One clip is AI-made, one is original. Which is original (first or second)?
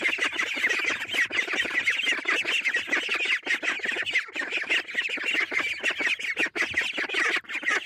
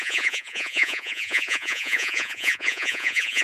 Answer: first